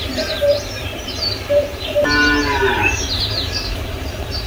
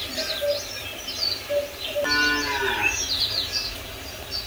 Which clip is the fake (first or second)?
first